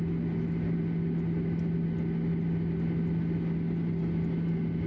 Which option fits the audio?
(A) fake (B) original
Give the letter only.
B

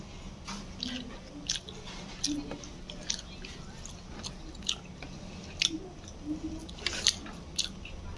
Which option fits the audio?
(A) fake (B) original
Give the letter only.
B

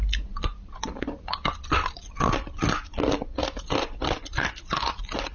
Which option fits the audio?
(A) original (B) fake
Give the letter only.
A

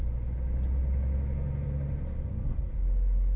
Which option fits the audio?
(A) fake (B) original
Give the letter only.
B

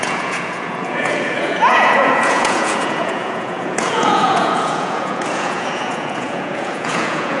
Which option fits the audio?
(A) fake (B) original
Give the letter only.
A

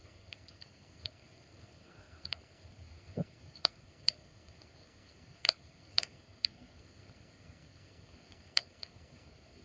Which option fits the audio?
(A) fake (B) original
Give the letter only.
A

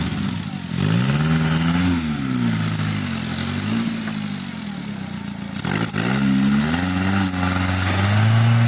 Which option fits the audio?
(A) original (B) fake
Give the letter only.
A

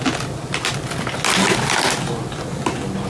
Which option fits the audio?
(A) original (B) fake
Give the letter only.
A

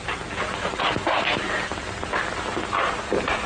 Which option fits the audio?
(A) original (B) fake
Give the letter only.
A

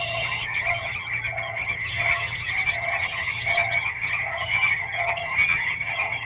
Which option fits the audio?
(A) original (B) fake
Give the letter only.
B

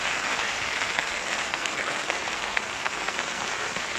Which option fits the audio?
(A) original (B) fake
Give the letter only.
B